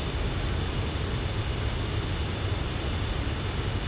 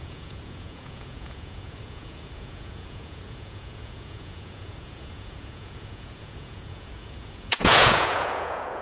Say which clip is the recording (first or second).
first